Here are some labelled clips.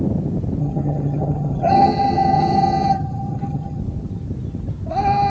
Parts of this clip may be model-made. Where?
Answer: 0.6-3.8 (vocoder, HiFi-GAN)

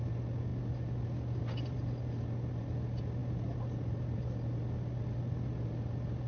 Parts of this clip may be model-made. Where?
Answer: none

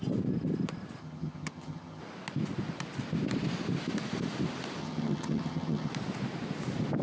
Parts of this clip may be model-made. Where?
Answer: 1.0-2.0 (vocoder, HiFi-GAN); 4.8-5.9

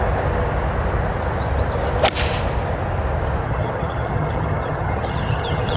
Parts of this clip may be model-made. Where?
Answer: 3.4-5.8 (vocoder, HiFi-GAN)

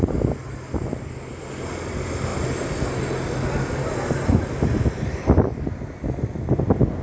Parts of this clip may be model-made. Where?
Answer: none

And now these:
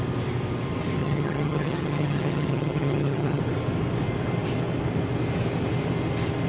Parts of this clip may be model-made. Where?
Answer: 1.0-3.4 (vocoder, HiFi-GAN)

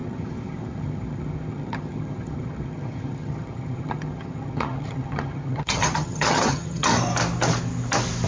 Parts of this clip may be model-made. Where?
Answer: 0.0-6.9 (vocoder, HiFi-GAN)

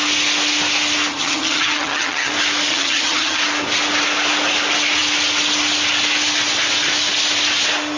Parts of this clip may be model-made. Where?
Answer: 1.1-2.3 (vocoder, HiFi-GAN); 2.7-3.4